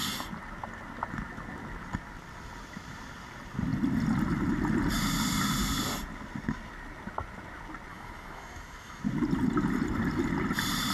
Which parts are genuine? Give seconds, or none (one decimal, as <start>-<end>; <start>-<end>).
0.0-7.9; 9.0-10.9